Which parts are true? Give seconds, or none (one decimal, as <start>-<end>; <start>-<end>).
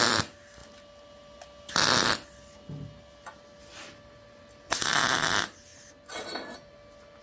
0.0-7.2